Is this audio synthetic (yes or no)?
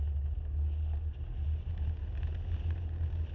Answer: no